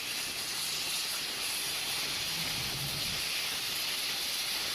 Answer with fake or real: real